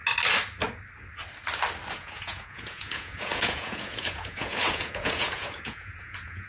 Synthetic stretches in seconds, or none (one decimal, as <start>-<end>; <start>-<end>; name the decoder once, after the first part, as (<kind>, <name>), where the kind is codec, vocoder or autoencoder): 1.9-6.5 (vocoder, Vocos)